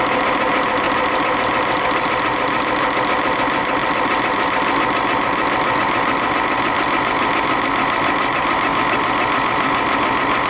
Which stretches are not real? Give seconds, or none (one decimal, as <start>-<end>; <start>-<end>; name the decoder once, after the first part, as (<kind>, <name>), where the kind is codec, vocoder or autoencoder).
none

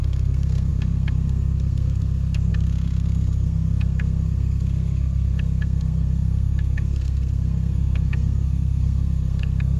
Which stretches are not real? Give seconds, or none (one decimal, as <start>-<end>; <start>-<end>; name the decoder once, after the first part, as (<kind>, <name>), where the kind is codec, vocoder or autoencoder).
0.0-9.8 (codec, SNAC)

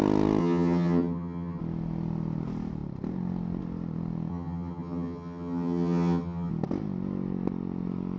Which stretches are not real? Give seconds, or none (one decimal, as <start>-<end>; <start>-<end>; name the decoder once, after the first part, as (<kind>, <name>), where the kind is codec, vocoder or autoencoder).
0.4-1.6 (vocoder, HiFi-GAN); 4.3-6.5